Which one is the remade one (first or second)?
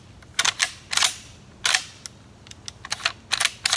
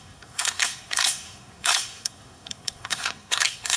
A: second